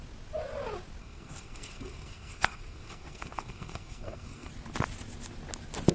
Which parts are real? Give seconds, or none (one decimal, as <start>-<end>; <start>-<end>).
0.0-1.0; 4.5-5.9